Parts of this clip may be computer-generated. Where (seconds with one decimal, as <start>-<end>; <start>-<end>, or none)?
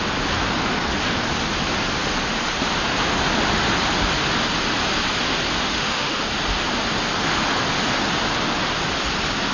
5.6-6.2